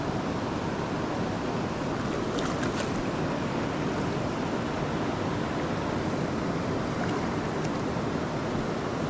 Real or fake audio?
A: real